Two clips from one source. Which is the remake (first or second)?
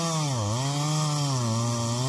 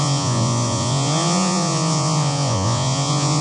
second